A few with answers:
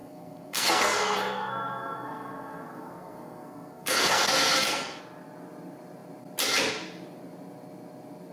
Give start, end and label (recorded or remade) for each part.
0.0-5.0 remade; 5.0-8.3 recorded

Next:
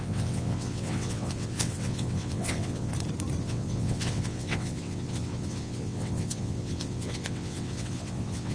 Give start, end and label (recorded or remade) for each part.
0.0-2.9 remade; 2.9-3.4 recorded; 3.4-8.5 remade

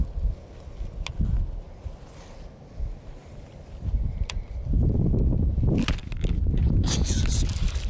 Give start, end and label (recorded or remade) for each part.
0.0-7.9 recorded

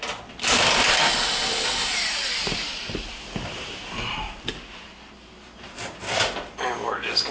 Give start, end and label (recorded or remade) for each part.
0.0-1.8 recorded; 1.8-4.5 remade; 4.5-7.3 recorded